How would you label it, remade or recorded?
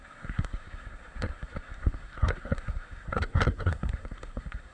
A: remade